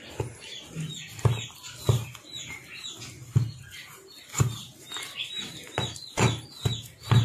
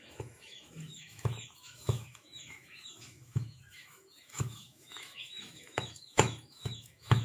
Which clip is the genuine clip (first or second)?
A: first